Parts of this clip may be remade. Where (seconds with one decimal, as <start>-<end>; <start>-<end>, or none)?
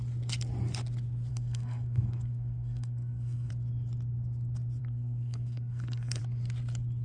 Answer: 1.3-3.5; 4.8-6.2